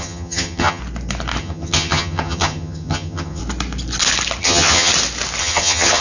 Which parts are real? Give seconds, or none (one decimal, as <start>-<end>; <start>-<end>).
0.8-1.4; 3.4-4.4; 4.9-5.4